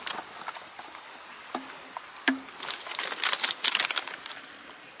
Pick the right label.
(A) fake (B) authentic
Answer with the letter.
B